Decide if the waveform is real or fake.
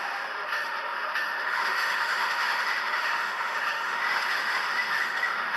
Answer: fake